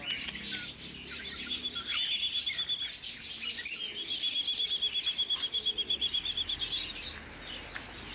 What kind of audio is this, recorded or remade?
recorded